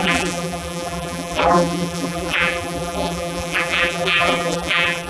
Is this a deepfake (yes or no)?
yes